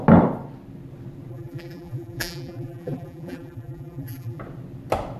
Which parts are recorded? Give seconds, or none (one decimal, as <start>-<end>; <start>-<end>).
0.0-1.3; 4.4-5.2